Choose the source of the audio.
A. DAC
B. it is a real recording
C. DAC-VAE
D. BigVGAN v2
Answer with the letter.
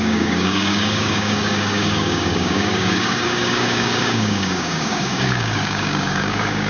A